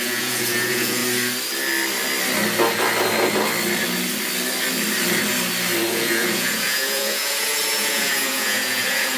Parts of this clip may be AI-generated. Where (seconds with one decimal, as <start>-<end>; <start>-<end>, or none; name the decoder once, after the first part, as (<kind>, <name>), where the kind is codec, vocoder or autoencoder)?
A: 0.0-1.0 (vocoder, Vocos); 5.9-9.2